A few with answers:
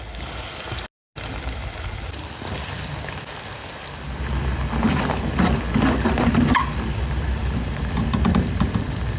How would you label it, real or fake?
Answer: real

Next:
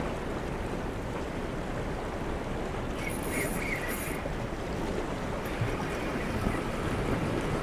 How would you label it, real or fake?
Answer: real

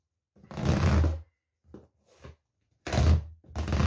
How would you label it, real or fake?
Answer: real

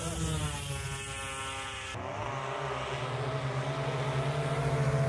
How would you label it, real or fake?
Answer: real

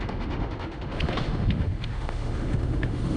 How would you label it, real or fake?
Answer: fake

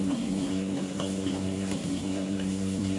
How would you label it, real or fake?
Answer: fake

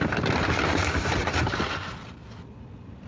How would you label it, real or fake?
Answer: real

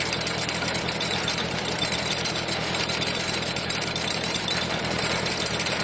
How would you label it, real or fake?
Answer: fake